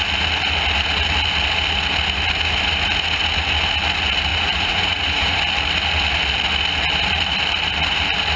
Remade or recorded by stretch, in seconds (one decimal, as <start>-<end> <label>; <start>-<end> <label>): 0.0-4.3 recorded; 4.3-5.4 remade; 5.4-8.4 recorded